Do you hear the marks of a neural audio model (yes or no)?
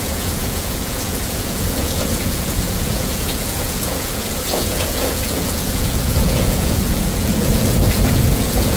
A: yes